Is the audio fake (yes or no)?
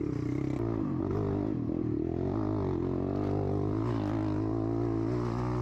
no